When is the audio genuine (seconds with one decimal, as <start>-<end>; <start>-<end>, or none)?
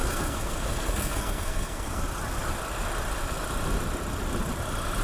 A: 2.0-5.0